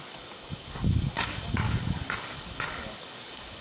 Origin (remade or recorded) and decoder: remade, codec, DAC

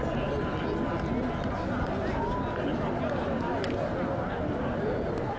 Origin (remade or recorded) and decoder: recorded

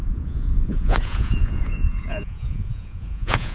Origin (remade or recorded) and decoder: remade, vocoder, Vocos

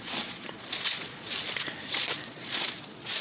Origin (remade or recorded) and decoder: remade, vocoder, Vocos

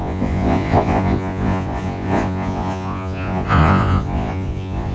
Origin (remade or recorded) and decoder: remade, vocoder, Vocos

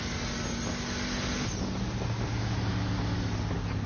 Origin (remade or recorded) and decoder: recorded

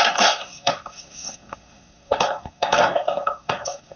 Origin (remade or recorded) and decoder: remade, codec, SNAC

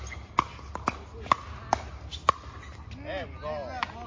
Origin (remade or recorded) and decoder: recorded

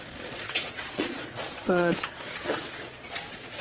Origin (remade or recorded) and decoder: remade, vocoder, Vocos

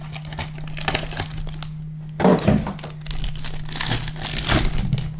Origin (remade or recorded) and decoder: recorded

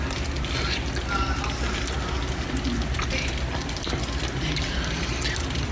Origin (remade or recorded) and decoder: recorded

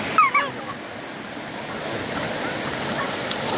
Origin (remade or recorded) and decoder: recorded